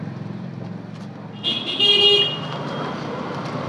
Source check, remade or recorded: recorded